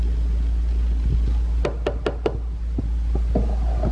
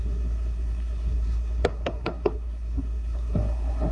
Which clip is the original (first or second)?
first